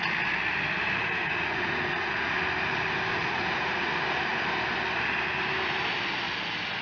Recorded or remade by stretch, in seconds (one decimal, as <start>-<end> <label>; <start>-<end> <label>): 0.0-1.0 recorded; 1.0-2.3 remade; 2.3-3.1 recorded; 3.1-3.9 remade; 3.9-6.8 recorded